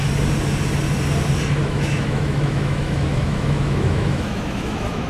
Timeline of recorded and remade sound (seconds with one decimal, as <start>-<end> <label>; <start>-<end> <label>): 0.0-1.6 recorded; 1.6-5.1 remade